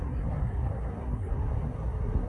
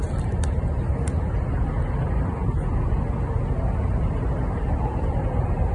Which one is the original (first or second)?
second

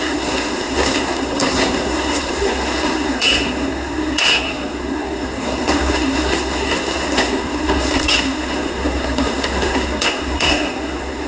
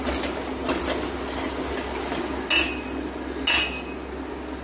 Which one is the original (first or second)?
second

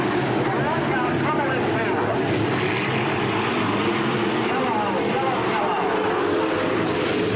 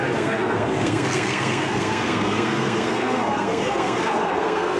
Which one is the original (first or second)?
first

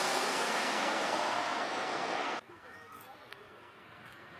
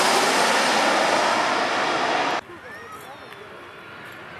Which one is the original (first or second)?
second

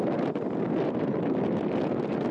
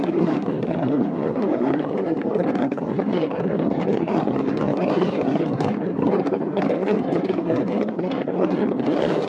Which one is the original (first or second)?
first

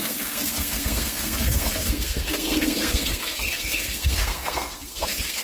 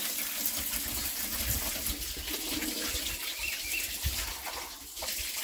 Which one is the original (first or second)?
second